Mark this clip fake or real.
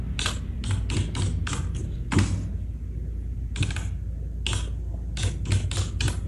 real